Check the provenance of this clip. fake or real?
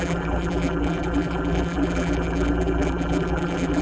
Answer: fake